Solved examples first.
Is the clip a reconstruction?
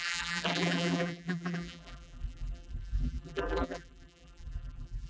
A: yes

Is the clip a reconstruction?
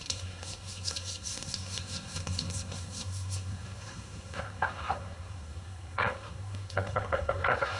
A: yes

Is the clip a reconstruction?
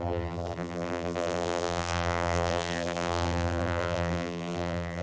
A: yes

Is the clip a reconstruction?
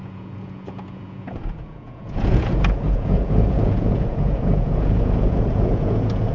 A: yes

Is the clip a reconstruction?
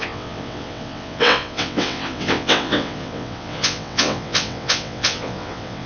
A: yes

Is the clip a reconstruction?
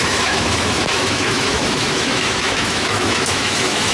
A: yes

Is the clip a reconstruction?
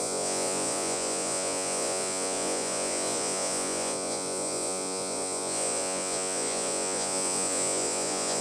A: yes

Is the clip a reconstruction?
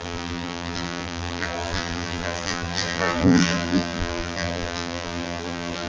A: yes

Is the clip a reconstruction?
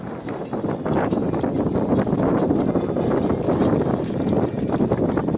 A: no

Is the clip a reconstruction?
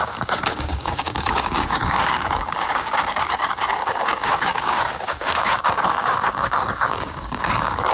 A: yes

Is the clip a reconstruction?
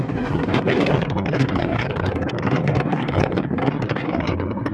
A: yes